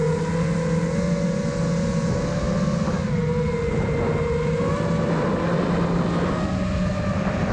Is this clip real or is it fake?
real